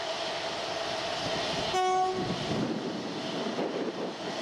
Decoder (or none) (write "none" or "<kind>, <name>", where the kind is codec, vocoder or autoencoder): none